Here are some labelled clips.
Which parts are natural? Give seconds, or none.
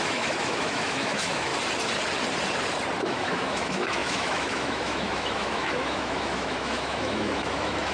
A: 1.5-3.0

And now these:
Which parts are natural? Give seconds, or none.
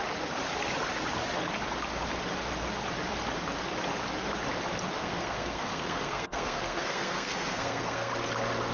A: 0.0-5.0; 8.1-8.7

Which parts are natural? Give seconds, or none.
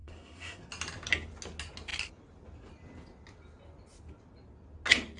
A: 0.7-5.2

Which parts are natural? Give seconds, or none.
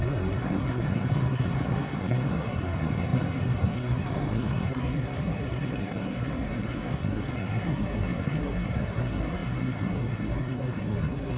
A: none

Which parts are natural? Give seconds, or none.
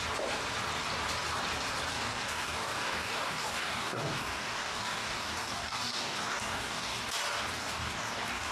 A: 0.0-1.9; 7.0-7.6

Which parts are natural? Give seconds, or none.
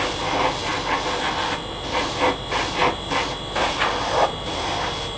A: 0.0-5.2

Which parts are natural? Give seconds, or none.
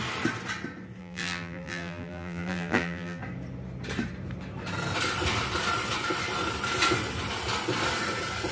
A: 0.0-1.0; 3.2-8.5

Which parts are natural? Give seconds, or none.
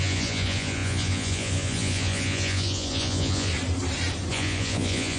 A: 3.5-4.3